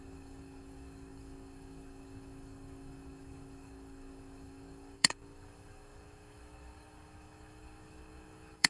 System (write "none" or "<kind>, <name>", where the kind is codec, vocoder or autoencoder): codec, DAC